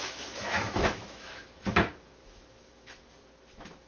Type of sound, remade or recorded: remade